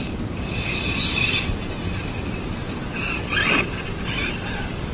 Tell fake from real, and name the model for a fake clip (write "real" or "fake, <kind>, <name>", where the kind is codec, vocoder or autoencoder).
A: fake, vocoder, BigVGAN v2